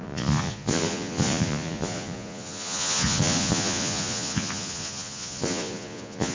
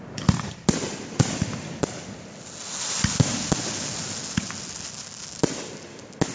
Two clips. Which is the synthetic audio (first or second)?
first